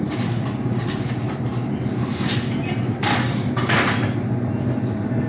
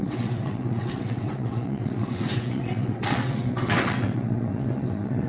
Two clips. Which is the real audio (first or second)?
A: first